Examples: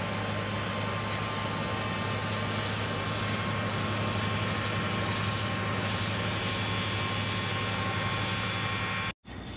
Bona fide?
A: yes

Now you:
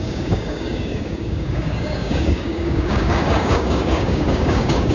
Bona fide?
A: no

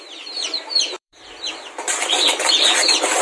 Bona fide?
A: no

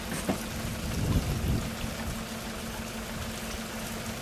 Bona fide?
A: yes